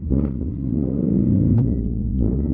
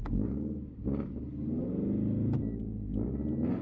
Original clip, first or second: second